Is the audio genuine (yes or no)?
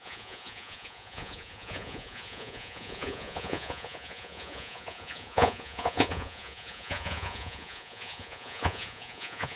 no